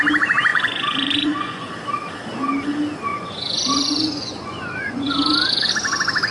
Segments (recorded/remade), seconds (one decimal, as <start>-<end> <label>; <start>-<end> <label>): 0.0-0.5 recorded; 0.5-1.7 remade; 1.7-3.1 recorded; 3.1-5.7 remade; 5.7-6.3 recorded